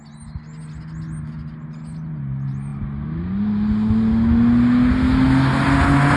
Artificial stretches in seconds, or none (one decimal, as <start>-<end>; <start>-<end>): none